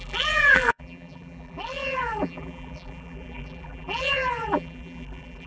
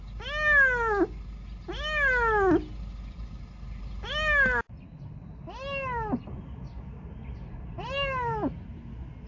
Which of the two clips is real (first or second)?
second